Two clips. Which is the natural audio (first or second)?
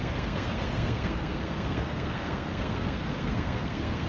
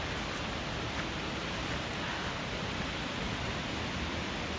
second